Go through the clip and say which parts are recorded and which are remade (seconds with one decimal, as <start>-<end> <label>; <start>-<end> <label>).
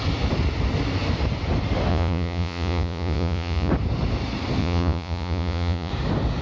0.0-1.9 recorded; 1.9-3.7 remade; 3.7-4.6 recorded; 4.6-5.9 remade; 5.9-6.4 recorded